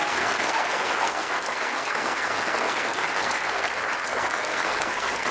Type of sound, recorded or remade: remade